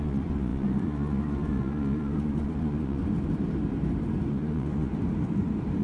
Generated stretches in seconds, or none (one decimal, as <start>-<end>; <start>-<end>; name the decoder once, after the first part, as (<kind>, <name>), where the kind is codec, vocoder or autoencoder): 0.0-3.0 (vocoder, Vocos); 4.3-4.9